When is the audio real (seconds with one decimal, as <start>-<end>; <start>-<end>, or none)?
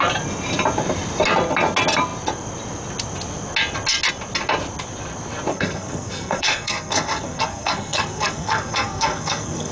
0.0-5.5